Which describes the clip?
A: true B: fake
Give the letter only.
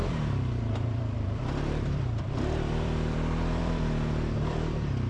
B